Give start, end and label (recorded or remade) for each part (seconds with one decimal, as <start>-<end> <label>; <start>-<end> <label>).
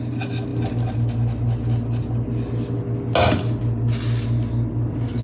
0.0-5.2 recorded